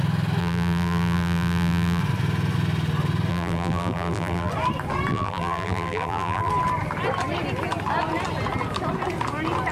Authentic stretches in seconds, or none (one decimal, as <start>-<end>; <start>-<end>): 0.0-0.4; 2.0-3.3; 4.5-5.1; 6.5-9.7